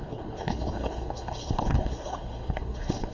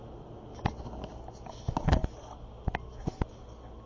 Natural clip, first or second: second